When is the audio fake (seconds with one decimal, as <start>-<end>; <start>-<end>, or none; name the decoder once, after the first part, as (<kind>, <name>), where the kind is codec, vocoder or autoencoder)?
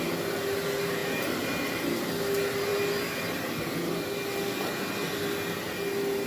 none